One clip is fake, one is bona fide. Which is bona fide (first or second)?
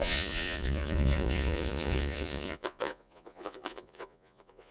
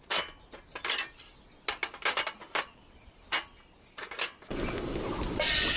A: second